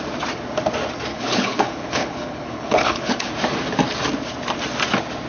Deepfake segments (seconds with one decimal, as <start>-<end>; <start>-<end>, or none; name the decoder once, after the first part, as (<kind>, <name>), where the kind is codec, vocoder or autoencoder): 1.1-3.3 (codec, HILCodec)